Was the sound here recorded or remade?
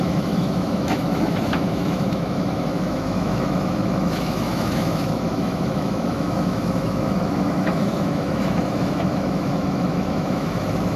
remade